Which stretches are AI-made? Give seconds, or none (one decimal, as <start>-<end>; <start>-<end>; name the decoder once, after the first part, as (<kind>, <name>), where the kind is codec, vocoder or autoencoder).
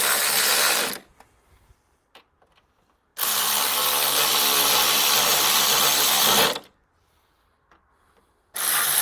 none